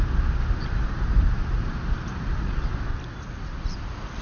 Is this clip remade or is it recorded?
recorded